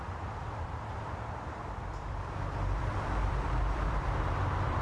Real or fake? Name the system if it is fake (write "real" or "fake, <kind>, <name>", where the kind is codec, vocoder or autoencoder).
fake, vocoder, BigVGAN v2